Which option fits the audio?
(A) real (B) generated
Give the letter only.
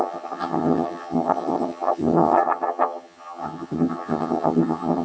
B